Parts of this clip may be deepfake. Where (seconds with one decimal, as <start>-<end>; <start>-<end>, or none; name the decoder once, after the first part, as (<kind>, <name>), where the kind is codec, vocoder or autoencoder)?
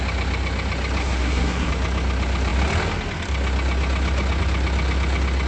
1.0-1.7 (codec, SNAC)